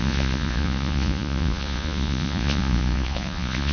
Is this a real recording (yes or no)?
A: no